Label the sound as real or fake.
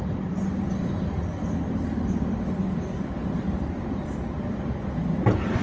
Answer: real